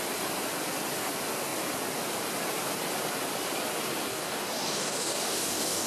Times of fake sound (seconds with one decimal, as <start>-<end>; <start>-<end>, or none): 4.1-5.9